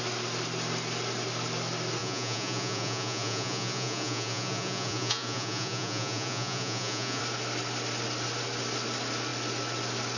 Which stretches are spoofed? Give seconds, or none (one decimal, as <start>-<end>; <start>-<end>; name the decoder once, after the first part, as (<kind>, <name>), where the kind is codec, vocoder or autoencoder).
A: 2.0-7.2 (vocoder, Vocos)